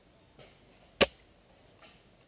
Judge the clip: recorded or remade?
recorded